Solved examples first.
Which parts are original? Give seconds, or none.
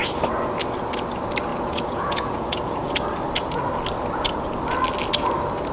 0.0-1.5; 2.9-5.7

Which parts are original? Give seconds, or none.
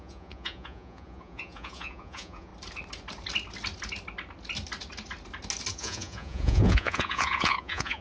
2.5-5.7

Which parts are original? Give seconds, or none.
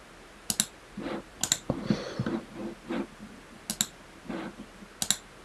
0.0-5.4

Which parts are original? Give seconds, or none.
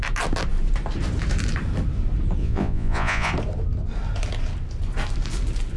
0.0-2.4; 3.3-5.8